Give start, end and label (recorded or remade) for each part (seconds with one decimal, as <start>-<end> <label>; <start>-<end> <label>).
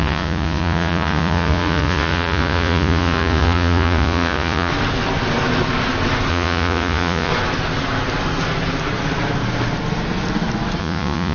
0.0-4.7 remade; 4.7-6.3 recorded; 6.3-7.3 remade; 7.3-10.8 recorded; 10.8-11.3 remade